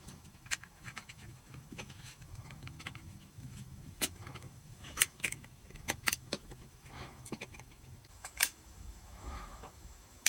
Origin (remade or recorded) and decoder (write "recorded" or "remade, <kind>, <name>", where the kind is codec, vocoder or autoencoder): remade, autoencoder, DAC-VAE